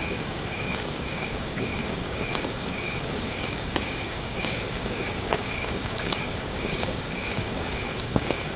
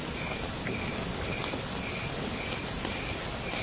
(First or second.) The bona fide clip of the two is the second